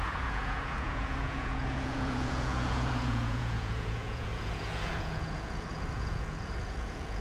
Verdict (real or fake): fake